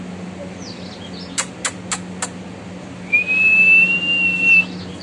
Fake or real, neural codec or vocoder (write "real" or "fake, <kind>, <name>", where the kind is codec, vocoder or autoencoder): real